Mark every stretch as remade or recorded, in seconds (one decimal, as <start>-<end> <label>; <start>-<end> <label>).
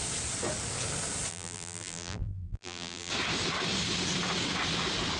0.0-1.3 recorded; 1.3-3.1 remade; 3.1-5.2 recorded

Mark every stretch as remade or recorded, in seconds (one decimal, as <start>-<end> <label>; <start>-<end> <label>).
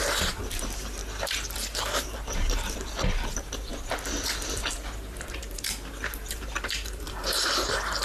0.0-8.0 remade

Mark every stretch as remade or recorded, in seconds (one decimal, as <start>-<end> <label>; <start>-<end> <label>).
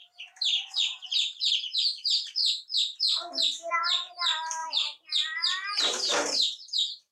0.0-1.5 remade; 1.5-2.4 recorded; 2.4-3.7 remade; 3.7-4.6 recorded; 4.6-7.1 remade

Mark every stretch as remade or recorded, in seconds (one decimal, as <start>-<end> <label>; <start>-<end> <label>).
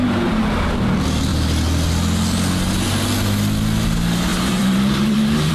0.0-4.3 recorded; 4.3-5.5 remade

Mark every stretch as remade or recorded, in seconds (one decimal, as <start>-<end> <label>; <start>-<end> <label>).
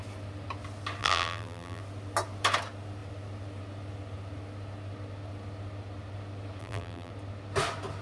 0.0-1.0 recorded; 1.0-1.8 remade; 1.8-6.6 recorded; 6.6-7.1 remade; 7.1-8.0 recorded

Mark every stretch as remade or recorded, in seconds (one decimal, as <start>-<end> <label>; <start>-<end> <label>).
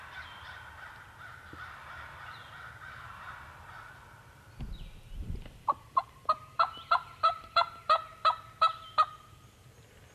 0.0-5.2 recorded; 5.2-10.1 remade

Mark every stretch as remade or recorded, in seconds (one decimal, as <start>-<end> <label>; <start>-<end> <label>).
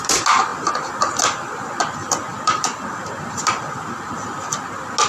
0.0-5.1 recorded